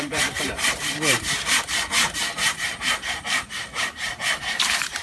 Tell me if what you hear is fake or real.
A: fake